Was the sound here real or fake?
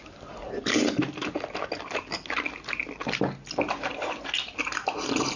real